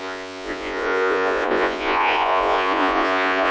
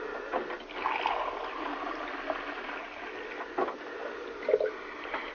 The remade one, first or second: first